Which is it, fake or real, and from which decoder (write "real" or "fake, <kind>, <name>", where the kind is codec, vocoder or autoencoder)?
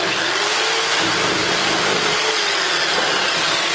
real